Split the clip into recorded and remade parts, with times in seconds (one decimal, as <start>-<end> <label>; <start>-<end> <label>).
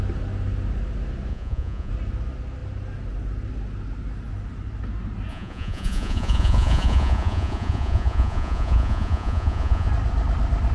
0.0-1.3 recorded; 1.3-1.9 remade; 1.9-5.3 recorded; 5.3-9.9 remade; 9.9-10.7 recorded